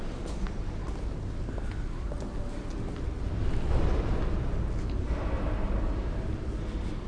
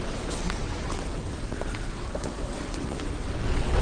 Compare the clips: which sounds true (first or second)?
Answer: first